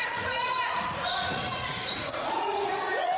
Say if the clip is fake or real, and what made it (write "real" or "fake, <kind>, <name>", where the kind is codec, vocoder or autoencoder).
fake, vocoder, Vocos